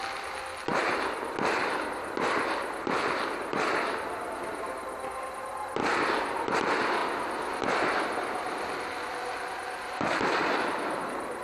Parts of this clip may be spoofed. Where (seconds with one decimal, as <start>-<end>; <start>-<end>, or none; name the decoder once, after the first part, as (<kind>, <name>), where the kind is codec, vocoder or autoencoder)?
0.7-4.3 (vocoder, BigVGAN v2)